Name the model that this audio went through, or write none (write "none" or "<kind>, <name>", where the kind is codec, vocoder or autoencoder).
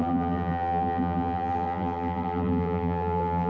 vocoder, BigVGAN v2